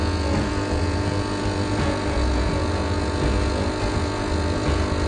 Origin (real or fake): fake